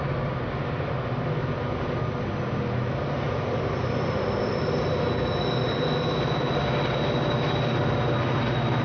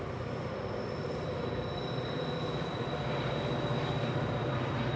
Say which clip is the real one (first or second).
first